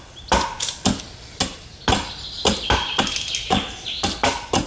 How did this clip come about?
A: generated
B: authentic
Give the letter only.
B